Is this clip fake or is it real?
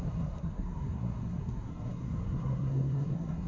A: fake